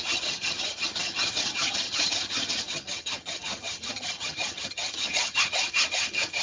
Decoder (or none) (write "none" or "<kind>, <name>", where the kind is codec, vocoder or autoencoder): vocoder, HiFi-GAN